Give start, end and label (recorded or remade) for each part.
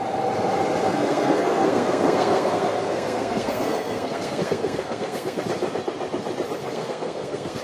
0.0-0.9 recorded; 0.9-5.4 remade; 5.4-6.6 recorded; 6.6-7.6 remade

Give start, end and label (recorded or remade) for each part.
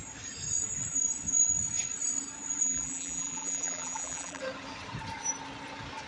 0.0-2.6 recorded; 2.6-4.4 remade; 4.4-6.1 recorded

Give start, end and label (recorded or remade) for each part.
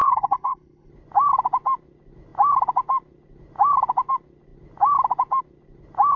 0.0-0.9 remade; 0.9-6.2 recorded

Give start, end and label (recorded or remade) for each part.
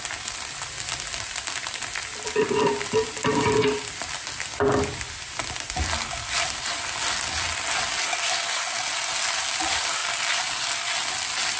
0.0-11.6 recorded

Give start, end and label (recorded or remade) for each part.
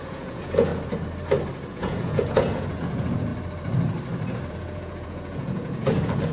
0.0-0.7 remade; 0.7-1.7 recorded; 1.7-3.3 remade; 3.3-4.5 recorded; 4.5-6.3 remade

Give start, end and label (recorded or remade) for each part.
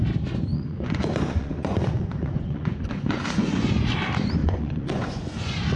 0.0-0.5 recorded; 0.5-3.7 remade; 3.7-4.4 recorded; 4.4-5.8 remade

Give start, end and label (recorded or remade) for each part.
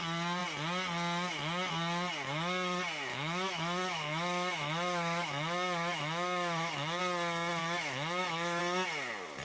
0.0-3.1 recorded; 3.1-7.0 remade; 7.0-7.6 recorded; 7.6-8.6 remade; 8.6-9.4 recorded